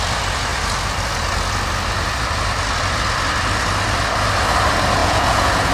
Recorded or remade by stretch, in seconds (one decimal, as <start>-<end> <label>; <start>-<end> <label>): 0.0-5.0 recorded; 5.0-5.7 remade